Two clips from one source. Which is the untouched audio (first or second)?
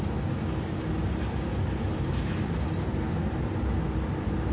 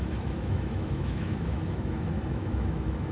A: first